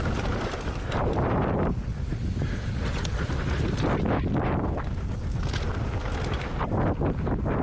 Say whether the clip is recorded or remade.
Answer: recorded